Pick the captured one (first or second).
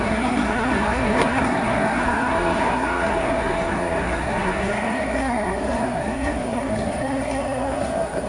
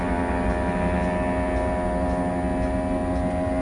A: second